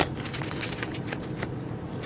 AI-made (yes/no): no